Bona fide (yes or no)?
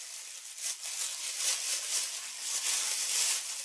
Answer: yes